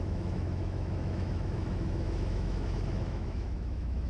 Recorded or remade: remade